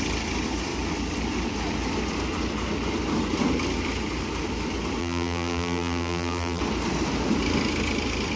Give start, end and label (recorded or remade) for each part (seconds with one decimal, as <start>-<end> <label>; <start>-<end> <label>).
0.0-5.0 recorded; 5.0-6.6 remade; 6.6-8.4 recorded